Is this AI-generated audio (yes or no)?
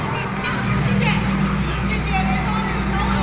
no